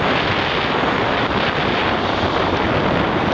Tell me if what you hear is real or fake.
real